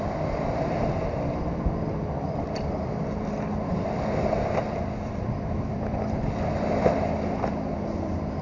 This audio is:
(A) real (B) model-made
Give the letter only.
A